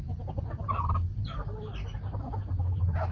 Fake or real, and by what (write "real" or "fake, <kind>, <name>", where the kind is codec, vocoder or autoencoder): real